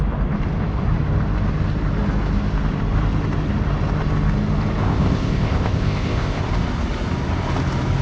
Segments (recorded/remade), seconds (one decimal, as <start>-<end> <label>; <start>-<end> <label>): 0.0-4.8 recorded; 4.8-6.4 remade; 6.4-8.0 recorded